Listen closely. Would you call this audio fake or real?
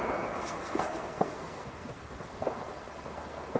fake